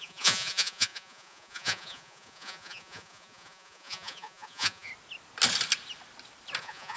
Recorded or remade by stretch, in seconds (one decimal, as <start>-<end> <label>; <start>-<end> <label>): 0.0-4.9 remade; 4.9-6.6 recorded; 6.6-7.0 remade